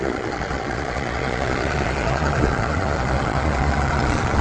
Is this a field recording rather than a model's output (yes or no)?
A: no